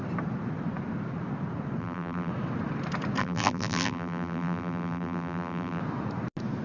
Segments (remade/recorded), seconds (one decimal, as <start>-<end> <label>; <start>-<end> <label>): 0.0-1.8 recorded; 1.8-2.3 remade; 2.3-3.2 recorded; 3.2-5.8 remade; 5.8-6.6 recorded